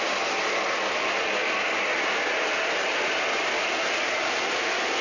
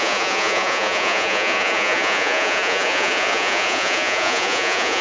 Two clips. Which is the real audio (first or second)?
first